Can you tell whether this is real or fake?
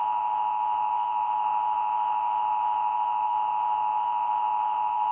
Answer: fake